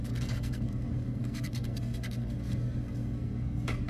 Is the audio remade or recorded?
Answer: remade